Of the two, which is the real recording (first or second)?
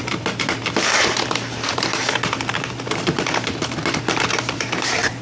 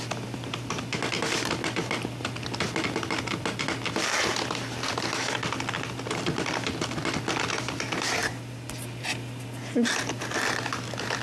second